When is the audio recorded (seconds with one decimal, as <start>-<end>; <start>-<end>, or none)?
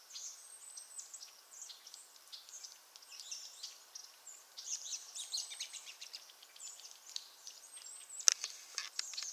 0.0-4.0; 7.6-9.3